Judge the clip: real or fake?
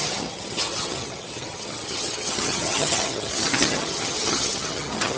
fake